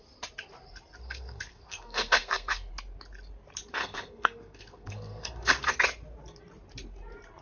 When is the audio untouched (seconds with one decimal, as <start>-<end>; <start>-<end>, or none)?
0.0-1.0; 2.7-3.8; 5.8-7.4